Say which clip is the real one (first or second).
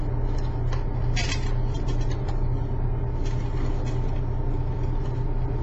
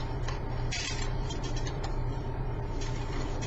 first